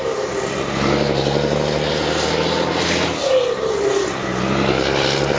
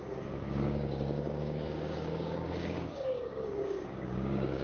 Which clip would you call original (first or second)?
first